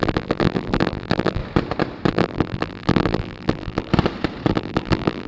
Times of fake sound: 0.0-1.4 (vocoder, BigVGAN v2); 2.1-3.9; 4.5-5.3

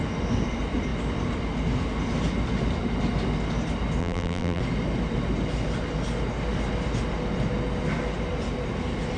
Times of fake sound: 4.0-4.6 (vocoder, BigVGAN v2)

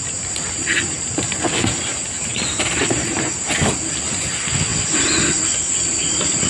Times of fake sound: none

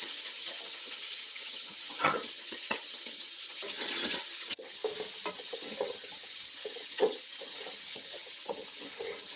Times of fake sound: 0.0-4.8 (vocoder, HiFi-GAN); 5.3-9.4